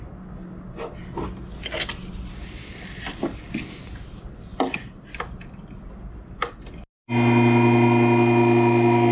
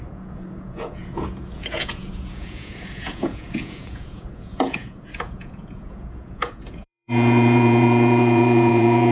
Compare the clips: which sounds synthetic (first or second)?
second